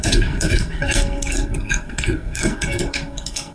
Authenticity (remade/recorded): remade